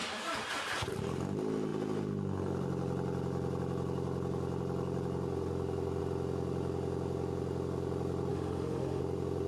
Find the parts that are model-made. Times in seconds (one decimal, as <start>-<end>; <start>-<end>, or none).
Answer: 8.3-9.0